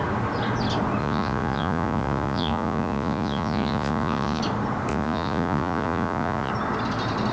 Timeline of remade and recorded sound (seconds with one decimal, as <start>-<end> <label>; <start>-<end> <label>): 0.0-1.0 recorded; 1.0-4.4 remade; 4.4-4.9 recorded; 4.9-6.5 remade; 6.5-7.3 recorded